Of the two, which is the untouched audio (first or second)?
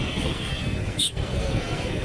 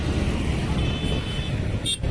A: second